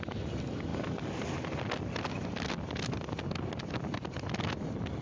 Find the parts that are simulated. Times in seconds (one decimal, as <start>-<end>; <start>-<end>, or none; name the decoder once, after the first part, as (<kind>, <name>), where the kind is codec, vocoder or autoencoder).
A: none